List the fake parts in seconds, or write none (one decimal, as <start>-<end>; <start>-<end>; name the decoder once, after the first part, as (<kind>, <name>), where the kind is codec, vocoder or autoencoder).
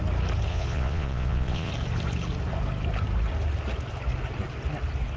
0.5-1.7 (vocoder, Vocos)